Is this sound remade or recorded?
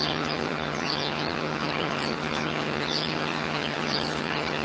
remade